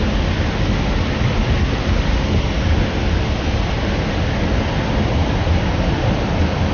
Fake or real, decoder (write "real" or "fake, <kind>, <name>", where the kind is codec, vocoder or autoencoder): real